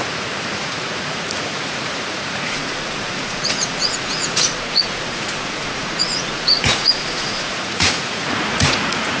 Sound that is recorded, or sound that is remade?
remade